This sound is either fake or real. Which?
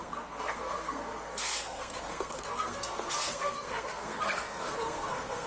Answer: fake